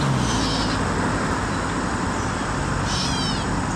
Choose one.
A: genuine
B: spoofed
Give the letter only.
A